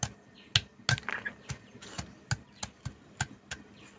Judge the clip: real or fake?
real